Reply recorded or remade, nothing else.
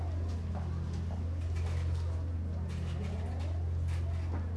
recorded